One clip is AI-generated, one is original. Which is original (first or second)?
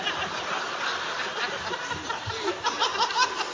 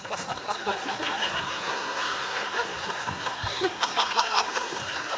first